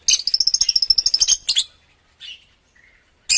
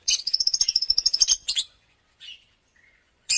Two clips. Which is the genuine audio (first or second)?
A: first